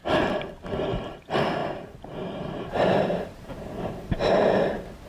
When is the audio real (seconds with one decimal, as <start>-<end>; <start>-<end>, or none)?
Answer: 0.0-1.6; 4.3-5.1